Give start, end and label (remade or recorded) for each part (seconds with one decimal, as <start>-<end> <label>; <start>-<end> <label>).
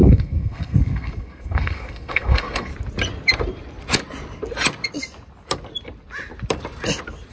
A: 0.0-2.7 remade; 2.7-7.3 recorded